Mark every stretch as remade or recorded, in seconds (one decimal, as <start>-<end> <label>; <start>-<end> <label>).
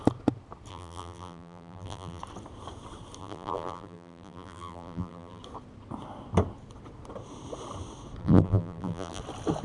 0.0-0.7 recorded; 0.7-2.2 remade; 2.2-3.2 recorded; 3.2-5.4 remade; 5.4-8.2 recorded; 8.2-9.2 remade; 9.2-9.6 recorded